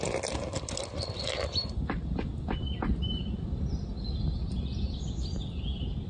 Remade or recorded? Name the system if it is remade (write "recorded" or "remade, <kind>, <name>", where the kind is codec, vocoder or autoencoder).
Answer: recorded